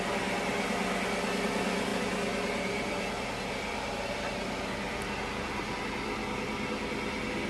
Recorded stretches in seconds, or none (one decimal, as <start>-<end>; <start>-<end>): 0.0-7.5